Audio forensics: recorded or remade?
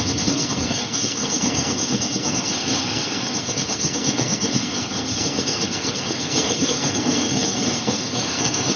remade